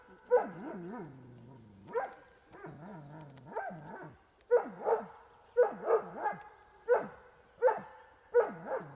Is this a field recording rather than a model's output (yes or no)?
yes